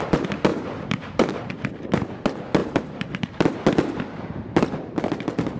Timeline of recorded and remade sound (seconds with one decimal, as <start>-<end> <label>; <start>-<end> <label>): 0.0-0.5 recorded; 0.5-1.5 remade; 1.5-2.6 recorded; 2.6-3.5 remade; 3.5-5.6 recorded